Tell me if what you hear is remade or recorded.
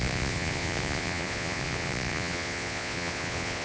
remade